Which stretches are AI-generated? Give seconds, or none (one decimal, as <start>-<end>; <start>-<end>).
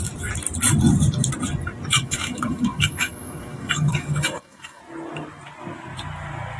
1.9-4.8